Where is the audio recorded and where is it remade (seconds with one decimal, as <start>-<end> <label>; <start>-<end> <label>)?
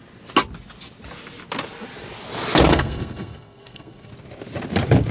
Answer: 0.0-2.7 recorded; 2.7-4.1 remade; 4.1-5.1 recorded